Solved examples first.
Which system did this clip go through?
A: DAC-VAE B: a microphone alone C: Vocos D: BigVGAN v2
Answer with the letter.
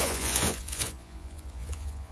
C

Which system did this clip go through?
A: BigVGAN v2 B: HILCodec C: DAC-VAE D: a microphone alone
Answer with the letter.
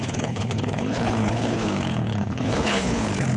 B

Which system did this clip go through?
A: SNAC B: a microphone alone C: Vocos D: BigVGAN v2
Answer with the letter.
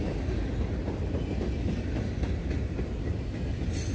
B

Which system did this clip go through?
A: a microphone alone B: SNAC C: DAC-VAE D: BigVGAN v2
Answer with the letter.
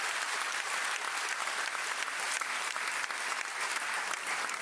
A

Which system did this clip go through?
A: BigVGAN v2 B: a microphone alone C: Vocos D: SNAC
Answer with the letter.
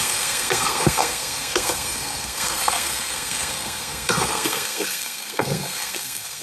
D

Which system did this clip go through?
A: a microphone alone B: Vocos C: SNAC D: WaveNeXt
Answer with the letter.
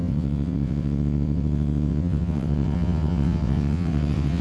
D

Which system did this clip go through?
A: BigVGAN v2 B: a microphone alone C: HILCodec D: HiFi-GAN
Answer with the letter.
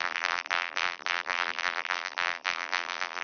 A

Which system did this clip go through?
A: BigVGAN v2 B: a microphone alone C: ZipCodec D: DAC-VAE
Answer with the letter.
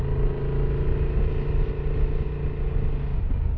B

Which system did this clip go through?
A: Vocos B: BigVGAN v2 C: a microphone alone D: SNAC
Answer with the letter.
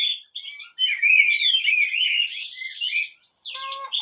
B